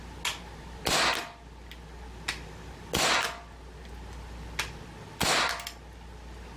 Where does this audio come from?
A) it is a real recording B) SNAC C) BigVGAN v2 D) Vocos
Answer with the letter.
A